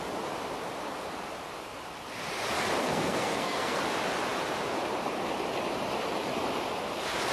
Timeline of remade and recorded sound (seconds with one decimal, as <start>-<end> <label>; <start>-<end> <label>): 0.0-2.8 recorded; 2.8-3.8 remade; 3.8-7.3 recorded